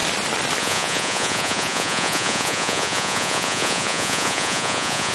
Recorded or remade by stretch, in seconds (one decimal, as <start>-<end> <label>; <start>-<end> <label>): 0.0-0.6 recorded; 0.6-5.1 remade